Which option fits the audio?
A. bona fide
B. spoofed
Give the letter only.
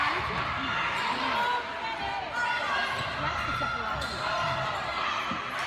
A